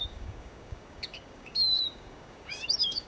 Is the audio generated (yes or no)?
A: yes